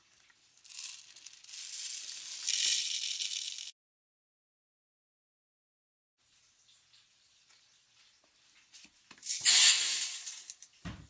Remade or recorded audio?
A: recorded